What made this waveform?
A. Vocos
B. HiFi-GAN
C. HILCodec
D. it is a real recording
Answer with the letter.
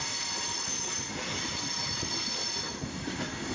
D